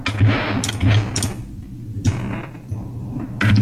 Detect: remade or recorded recorded